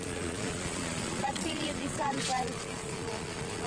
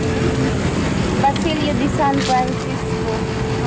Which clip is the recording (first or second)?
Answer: second